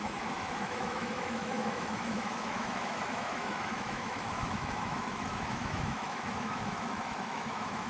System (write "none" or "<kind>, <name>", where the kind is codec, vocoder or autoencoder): autoencoder, DAC-VAE